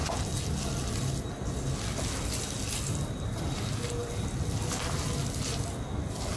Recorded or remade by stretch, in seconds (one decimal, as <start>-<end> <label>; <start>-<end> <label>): 0.0-6.4 recorded